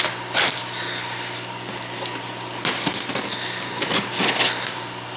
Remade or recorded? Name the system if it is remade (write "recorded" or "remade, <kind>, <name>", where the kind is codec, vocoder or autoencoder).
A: recorded